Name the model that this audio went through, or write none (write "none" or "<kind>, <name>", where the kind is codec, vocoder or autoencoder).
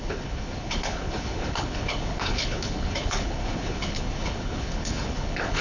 codec, HILCodec